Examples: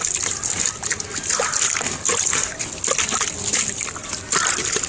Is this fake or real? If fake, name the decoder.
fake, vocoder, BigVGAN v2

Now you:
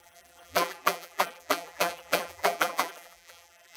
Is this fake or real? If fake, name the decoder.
fake, vocoder, BigVGAN v2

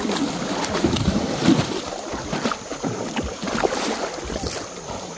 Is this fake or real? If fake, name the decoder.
real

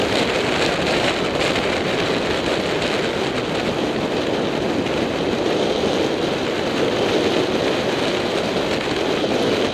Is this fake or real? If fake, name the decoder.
real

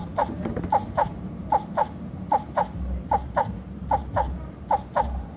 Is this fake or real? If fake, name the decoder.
fake, vocoder, BigVGAN v2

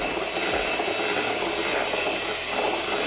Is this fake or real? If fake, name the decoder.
real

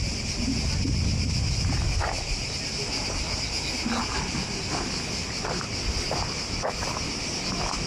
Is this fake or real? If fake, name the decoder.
real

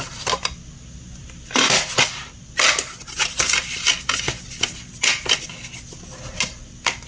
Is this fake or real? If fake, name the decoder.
real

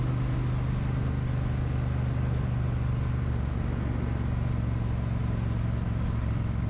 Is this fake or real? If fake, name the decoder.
real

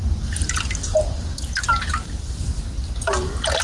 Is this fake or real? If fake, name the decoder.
real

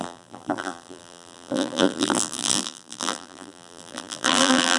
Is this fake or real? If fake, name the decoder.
fake, vocoder, BigVGAN v2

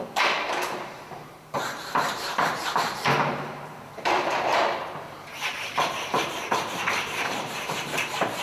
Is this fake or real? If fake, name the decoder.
fake, vocoder, BigVGAN v2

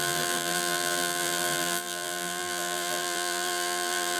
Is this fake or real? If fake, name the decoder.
fake, vocoder, BigVGAN v2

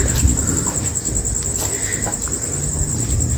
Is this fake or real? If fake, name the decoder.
real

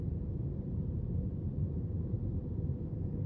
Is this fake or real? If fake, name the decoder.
fake, vocoder, BigVGAN v2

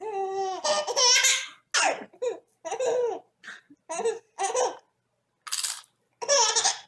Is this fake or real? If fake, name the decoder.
real